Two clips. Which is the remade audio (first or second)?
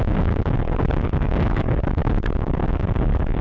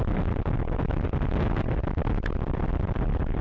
first